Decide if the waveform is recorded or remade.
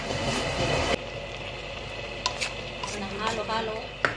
recorded